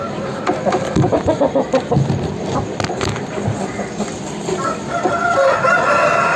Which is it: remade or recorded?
recorded